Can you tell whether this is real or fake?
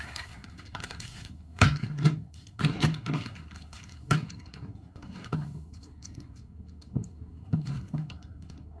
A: fake